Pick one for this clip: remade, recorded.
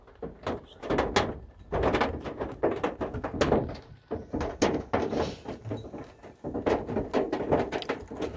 recorded